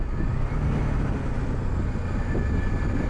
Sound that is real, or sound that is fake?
real